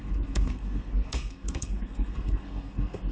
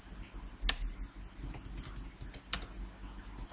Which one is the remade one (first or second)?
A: first